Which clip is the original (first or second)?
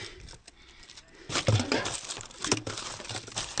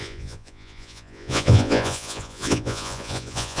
first